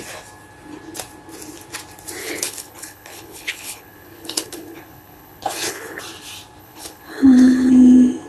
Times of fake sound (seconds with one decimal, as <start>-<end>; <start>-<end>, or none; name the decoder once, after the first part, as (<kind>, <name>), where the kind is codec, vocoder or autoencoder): 2.2-6.0 (codec, HILCodec); 6.6-7.7